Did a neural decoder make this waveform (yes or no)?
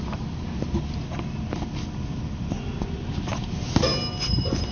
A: no